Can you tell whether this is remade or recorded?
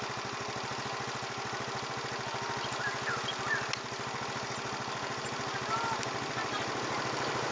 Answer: recorded